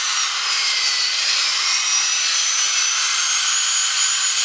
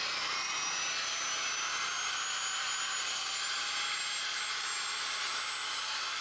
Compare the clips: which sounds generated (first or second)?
first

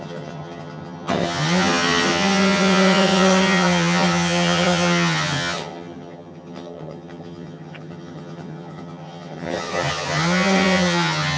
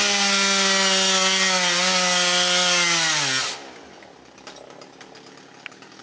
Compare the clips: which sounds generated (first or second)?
first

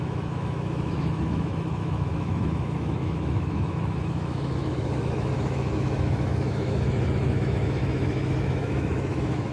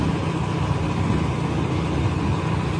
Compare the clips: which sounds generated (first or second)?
first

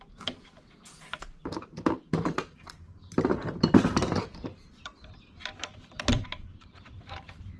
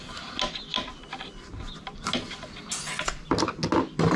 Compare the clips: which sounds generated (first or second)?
first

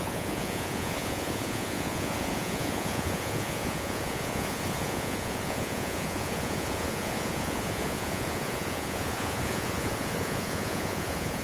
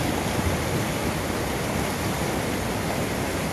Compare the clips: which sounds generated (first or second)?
first